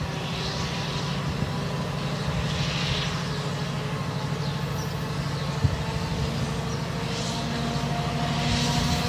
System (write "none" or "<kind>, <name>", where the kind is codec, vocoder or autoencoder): none